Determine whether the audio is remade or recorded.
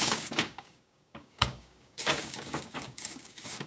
remade